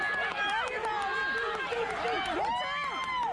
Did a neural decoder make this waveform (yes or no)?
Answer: no